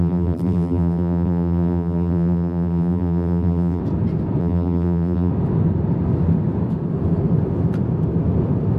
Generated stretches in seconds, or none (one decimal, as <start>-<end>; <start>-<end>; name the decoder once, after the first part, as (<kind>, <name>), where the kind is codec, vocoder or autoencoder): 0.0-3.8 (vocoder, BigVGAN v2); 4.4-5.3